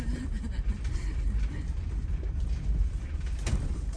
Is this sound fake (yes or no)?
yes